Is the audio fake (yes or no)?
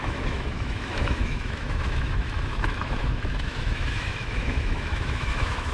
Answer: yes